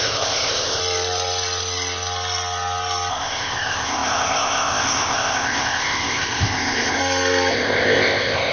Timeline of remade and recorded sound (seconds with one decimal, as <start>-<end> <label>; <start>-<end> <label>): 0.0-0.8 remade; 0.8-3.1 recorded; 3.1-7.0 remade; 7.0-7.5 recorded; 7.5-8.5 remade